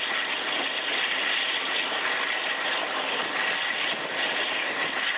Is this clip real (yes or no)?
yes